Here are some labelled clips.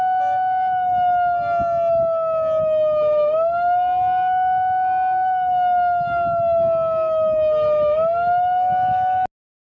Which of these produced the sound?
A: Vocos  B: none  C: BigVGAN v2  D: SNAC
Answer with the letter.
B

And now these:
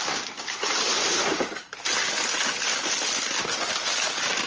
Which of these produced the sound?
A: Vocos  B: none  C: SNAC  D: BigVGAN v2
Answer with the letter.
B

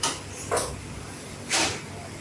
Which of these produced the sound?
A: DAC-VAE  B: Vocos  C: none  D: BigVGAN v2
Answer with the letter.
C